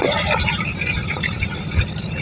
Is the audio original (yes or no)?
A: no